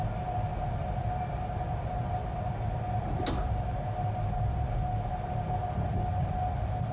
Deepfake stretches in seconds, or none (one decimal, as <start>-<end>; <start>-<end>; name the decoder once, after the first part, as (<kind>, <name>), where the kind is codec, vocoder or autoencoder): none